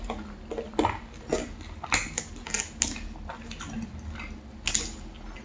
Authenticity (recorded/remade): recorded